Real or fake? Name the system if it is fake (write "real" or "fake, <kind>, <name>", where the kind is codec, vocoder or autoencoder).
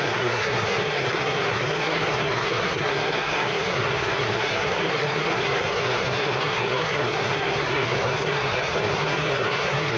fake, codec, SNAC